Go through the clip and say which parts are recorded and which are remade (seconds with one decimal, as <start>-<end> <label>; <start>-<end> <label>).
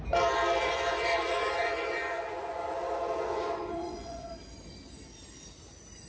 0.0-0.6 recorded; 0.6-4.3 remade; 4.3-6.1 recorded